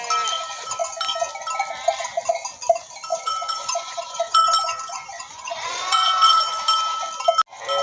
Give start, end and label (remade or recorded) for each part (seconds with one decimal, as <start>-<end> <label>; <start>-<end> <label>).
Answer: 0.0-3.1 recorded; 3.1-6.5 remade; 6.5-7.8 recorded